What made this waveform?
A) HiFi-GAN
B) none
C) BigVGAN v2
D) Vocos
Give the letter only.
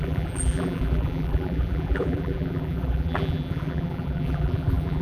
C